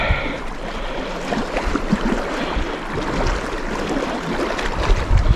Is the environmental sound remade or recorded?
recorded